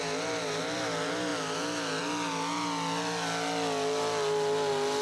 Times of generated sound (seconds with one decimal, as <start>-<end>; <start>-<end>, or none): none